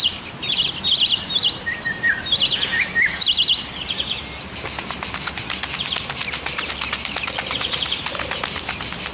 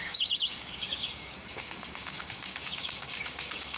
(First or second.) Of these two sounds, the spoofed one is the second